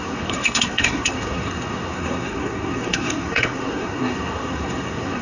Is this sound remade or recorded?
remade